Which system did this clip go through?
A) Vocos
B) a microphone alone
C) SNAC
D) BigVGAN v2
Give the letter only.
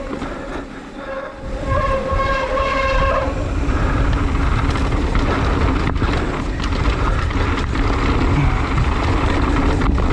B